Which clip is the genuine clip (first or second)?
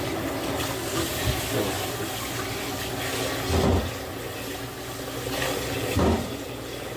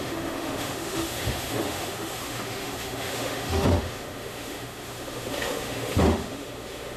first